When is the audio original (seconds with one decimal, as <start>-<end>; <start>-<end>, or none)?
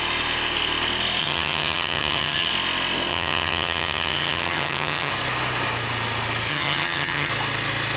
0.0-1.2; 2.5-3.1; 5.1-6.5; 7.3-8.0